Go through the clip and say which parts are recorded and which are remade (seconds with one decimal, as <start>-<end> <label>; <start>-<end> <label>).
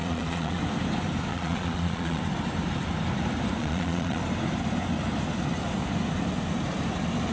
0.0-0.6 remade; 0.6-1.3 recorded; 1.3-2.2 remade; 2.2-3.6 recorded; 3.6-4.2 remade; 4.2-7.3 recorded